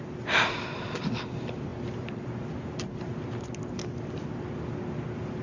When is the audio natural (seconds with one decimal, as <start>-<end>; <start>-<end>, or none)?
0.0-5.4

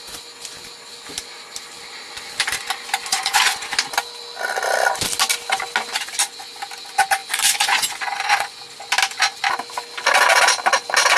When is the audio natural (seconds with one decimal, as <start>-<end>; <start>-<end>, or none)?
0.0-3.1; 3.7-7.2; 8.6-11.2

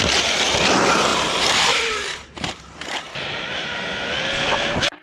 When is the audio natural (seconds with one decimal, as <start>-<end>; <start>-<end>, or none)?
0.0-1.1; 4.1-5.0

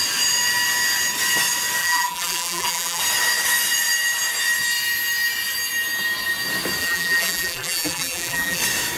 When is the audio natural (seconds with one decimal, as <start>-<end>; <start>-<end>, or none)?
0.0-1.8; 3.0-6.8; 8.6-9.0

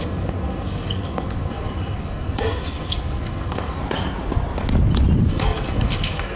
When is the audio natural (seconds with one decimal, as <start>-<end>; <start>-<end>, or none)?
3.8-5.3

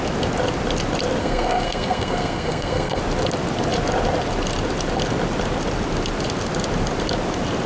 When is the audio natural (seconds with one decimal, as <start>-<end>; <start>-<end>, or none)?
0.0-1.2; 3.0-7.7

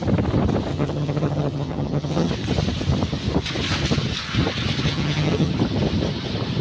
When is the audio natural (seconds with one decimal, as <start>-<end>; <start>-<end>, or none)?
0.0-0.7; 2.3-4.9; 5.5-6.6